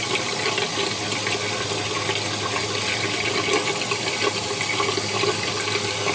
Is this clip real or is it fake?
real